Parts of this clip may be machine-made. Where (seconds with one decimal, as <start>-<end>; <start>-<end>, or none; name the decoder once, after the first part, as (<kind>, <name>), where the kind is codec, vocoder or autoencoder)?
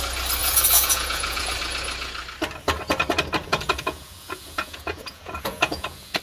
0.4-1.5 (vocoder, Vocos); 3.4-6.2